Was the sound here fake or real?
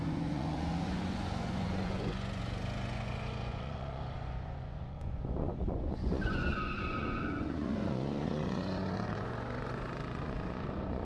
fake